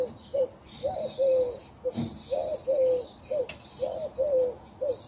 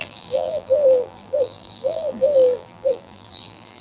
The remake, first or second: second